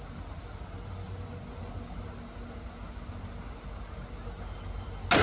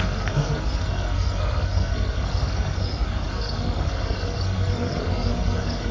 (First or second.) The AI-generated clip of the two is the second